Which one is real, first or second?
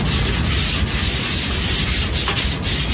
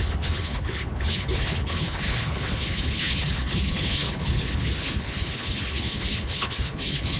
first